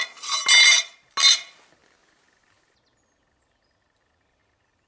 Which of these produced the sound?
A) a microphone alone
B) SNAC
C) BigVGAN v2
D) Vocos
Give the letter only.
A